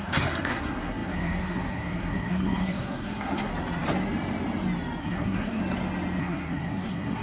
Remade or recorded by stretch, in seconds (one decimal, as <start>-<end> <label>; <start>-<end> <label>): 0.0-3.5 remade; 3.5-5.0 recorded; 5.0-5.6 remade; 5.6-6.2 recorded; 6.2-7.2 remade